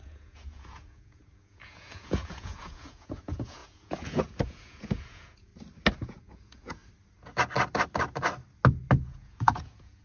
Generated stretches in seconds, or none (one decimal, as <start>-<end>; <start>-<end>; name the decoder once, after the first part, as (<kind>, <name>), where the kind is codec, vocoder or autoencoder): 0.0-5.5 (vocoder, Vocos); 6.0-6.8; 9.0-10.0